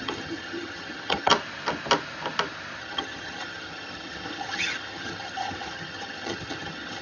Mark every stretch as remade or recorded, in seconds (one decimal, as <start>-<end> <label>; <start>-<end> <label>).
0.0-1.3 remade; 1.3-2.8 recorded; 2.8-7.0 remade